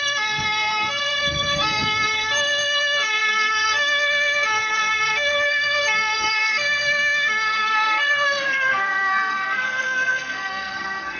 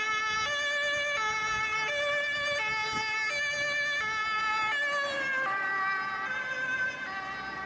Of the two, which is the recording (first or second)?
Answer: second